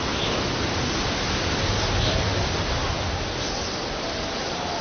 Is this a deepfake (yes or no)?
no